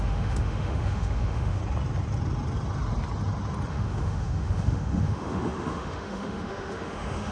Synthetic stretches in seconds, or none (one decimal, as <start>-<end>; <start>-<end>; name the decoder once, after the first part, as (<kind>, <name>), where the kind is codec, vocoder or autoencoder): 0.0-1.6 (autoencoder, DAC-VAE); 3.7-7.3